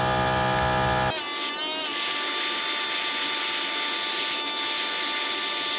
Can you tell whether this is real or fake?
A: real